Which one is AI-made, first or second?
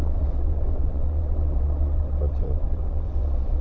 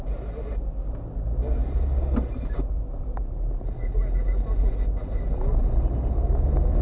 first